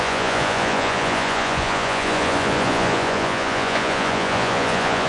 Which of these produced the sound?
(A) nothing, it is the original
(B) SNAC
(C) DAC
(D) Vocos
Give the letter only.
D